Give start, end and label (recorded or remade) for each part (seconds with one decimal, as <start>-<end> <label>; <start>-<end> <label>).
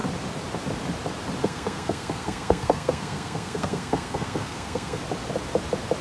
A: 0.0-1.4 recorded; 1.4-5.0 remade; 5.0-6.0 recorded